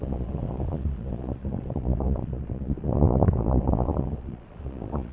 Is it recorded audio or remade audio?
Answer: remade